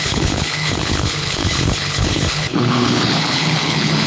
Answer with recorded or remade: remade